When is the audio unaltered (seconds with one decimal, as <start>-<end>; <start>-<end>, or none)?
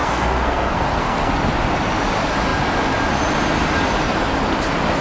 1.3-5.0